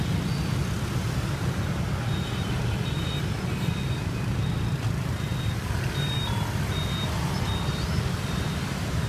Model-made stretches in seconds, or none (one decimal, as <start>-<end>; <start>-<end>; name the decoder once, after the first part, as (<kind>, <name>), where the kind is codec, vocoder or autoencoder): none